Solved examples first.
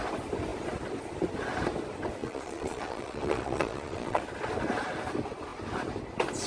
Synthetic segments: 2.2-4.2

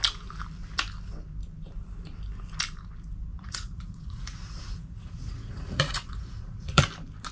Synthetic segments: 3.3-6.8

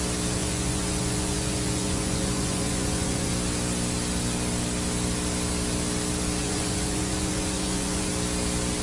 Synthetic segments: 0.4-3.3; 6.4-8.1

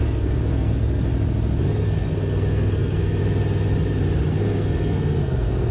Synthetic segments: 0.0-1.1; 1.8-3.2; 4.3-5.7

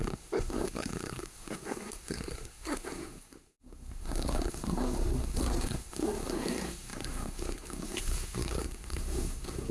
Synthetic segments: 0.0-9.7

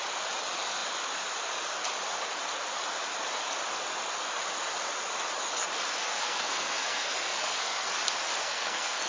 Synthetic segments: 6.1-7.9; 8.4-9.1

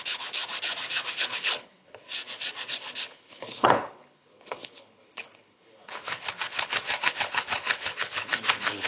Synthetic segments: 0.0-0.4; 1.2-2.1; 2.7-8.9

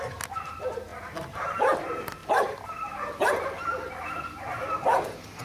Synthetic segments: 0.9-1.8; 2.2-5.4